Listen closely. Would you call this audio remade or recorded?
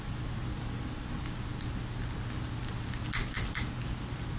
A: recorded